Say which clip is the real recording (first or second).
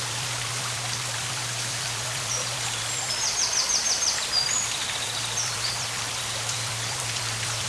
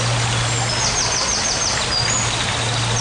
second